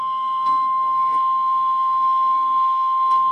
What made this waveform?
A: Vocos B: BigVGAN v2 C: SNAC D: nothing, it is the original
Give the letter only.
C